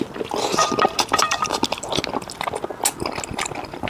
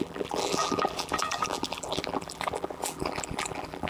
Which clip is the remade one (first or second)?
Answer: second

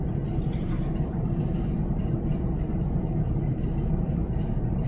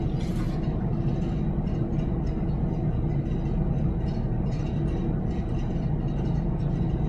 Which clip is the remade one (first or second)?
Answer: first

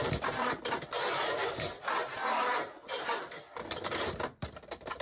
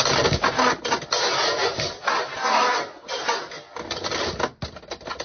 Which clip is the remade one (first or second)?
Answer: first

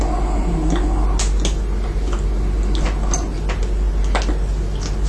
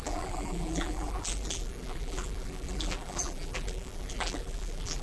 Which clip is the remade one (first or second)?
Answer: second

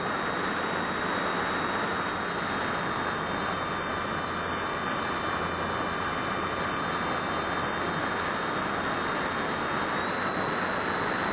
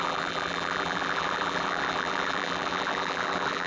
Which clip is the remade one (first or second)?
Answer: second